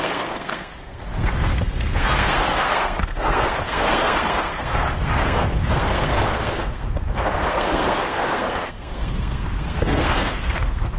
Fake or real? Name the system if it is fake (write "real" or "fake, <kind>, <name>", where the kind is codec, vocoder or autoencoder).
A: fake, codec, SNAC